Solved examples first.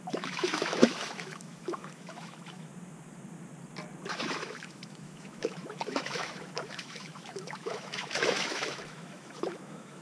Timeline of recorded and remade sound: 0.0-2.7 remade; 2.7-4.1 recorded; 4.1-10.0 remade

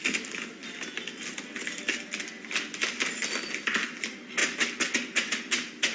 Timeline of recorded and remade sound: 0.0-5.9 recorded

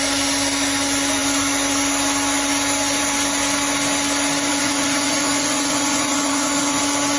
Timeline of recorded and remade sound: 0.0-4.5 recorded; 4.5-6.8 remade; 6.8-7.2 recorded

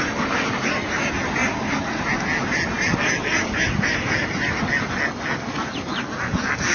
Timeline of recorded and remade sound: 0.0-6.7 recorded

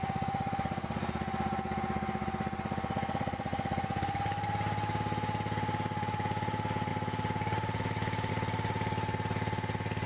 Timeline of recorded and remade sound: 0.0-10.1 recorded

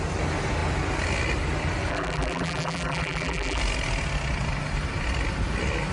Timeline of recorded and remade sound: 0.0-1.9 recorded; 1.9-3.6 remade; 3.6-5.9 recorded

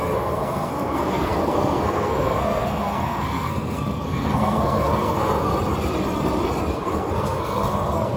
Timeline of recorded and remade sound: 0.0-5.5 remade; 5.5-6.7 recorded; 6.7-8.2 remade

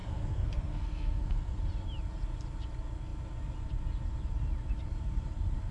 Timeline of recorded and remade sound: 0.0-1.6 remade; 1.6-5.7 recorded